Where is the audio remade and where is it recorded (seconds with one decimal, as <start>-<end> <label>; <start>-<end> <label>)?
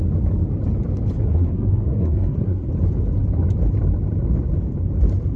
0.0-1.2 recorded; 1.2-2.7 remade; 2.7-5.4 recorded